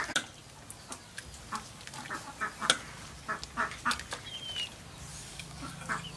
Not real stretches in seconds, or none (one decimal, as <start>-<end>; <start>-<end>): 5.1-5.7